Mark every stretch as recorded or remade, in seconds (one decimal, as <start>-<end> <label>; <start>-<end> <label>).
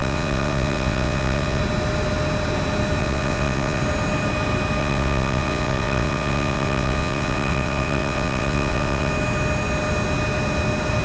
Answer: 0.0-1.6 remade; 1.6-3.0 recorded; 3.0-3.8 remade; 3.8-4.8 recorded; 4.8-9.1 remade; 9.1-11.0 recorded